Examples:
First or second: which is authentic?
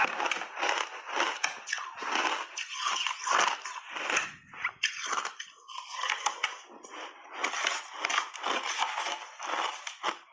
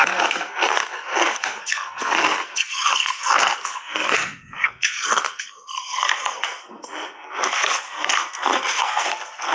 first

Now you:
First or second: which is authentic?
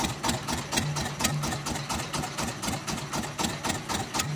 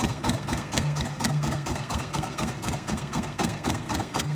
first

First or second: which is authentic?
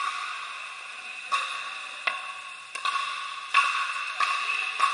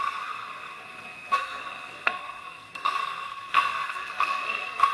first